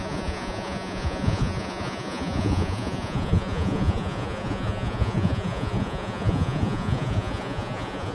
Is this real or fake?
fake